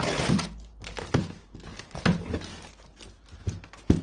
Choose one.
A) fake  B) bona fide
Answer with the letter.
B